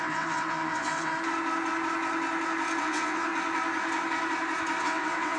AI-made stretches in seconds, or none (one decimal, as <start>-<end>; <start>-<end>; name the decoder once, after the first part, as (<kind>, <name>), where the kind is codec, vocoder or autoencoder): 0.0-1.1 (vocoder, WaveNeXt); 2.8-3.3; 4.8-5.4